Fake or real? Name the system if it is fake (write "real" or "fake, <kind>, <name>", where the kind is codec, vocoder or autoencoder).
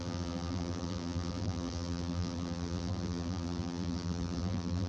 fake, vocoder, BigVGAN v2